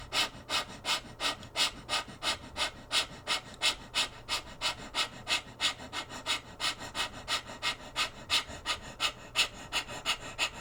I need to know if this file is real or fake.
real